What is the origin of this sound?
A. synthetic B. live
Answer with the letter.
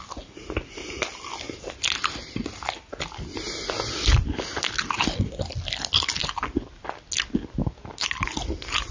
B